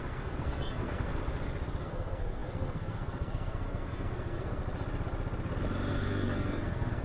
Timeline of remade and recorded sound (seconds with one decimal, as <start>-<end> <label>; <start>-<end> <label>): 0.0-1.1 remade; 1.1-1.8 recorded; 1.8-4.6 remade; 4.6-5.9 recorded; 5.9-7.0 remade